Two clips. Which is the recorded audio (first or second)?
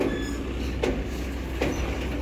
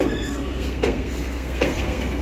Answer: first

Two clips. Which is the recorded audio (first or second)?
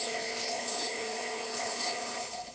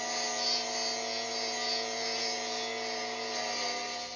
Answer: second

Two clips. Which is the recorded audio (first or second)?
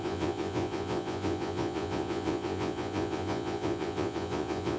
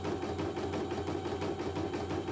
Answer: second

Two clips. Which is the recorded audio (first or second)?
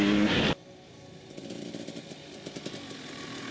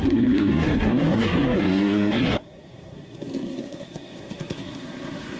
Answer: first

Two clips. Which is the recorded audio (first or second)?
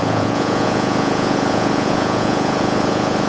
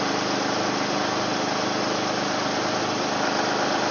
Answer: second